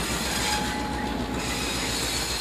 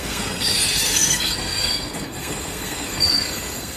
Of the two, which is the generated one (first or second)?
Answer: second